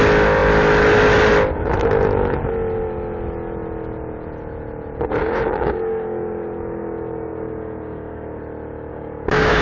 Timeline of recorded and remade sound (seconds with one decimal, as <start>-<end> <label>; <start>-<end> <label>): 0.0-5.2 recorded; 5.2-8.4 remade; 8.4-8.9 recorded; 8.9-9.6 remade